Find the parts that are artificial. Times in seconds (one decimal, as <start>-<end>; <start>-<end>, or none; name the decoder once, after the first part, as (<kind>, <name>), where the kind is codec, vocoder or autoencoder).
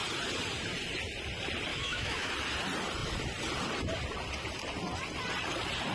1.7-2.3 (autoencoder, DAC-VAE)